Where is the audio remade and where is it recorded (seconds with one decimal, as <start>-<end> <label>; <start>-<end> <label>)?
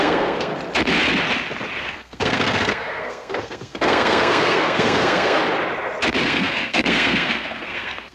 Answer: 0.0-0.5 remade; 0.5-1.8 recorded; 1.8-5.4 remade; 5.4-6.2 recorded; 6.2-8.1 remade